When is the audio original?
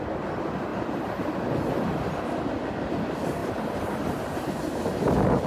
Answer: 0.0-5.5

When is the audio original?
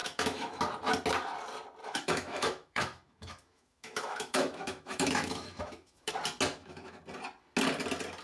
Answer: 0.6-1.8; 6.1-6.5; 7.0-8.2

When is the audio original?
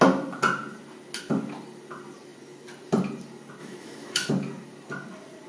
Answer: 0.0-3.6; 4.3-5.5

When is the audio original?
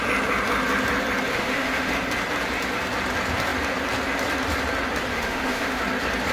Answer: 0.0-1.3; 1.9-5.1; 5.8-6.3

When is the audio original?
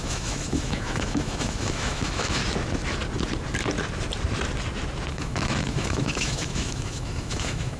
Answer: 2.4-5.1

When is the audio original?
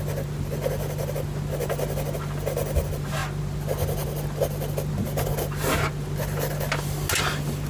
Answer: 0.0-7.7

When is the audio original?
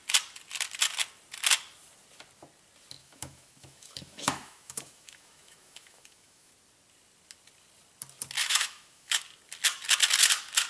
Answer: 0.0-3.0; 6.5-8.4; 9.2-10.7